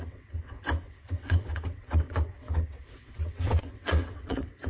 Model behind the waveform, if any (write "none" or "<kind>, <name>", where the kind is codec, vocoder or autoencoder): vocoder, WaveNeXt